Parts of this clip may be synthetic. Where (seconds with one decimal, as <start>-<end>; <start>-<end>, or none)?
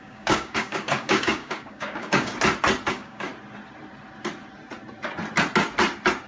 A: 0.0-2.3; 2.9-3.3